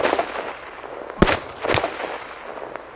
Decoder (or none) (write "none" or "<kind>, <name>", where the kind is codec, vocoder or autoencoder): none